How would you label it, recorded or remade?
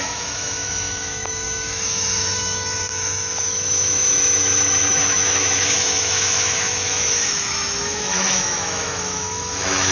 remade